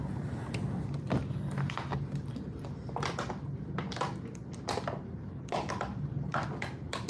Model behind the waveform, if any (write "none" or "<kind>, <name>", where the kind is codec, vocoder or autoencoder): none